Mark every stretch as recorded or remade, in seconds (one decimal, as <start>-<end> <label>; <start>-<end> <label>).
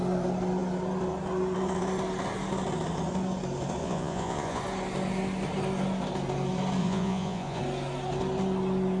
0.0-3.8 recorded; 3.8-4.6 remade; 4.6-6.8 recorded; 6.8-7.6 remade; 7.6-9.0 recorded